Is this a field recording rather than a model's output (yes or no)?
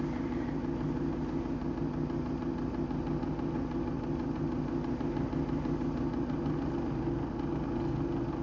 yes